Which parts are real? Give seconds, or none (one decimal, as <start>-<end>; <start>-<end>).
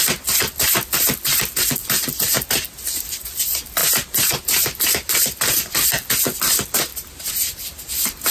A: 0.0-3.8; 4.9-6.9; 7.9-8.3